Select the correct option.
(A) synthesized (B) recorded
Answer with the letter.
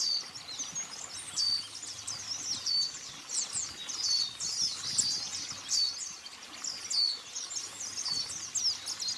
B